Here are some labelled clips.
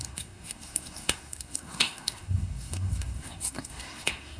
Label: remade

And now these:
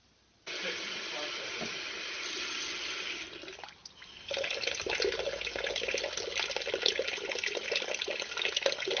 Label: recorded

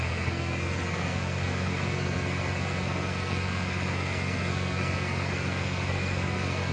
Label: remade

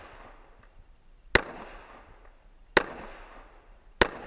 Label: recorded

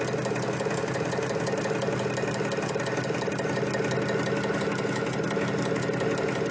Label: recorded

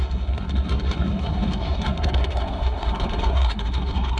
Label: remade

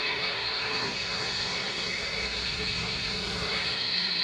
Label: remade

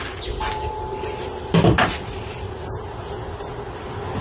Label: recorded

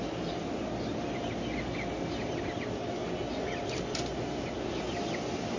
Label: recorded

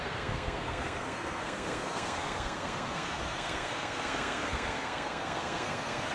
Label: remade